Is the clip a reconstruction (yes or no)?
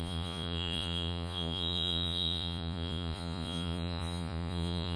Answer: yes